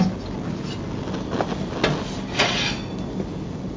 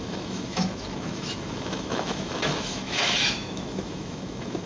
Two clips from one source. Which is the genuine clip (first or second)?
first